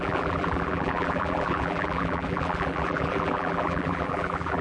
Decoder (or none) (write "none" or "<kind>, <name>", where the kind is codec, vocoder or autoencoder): vocoder, BigVGAN v2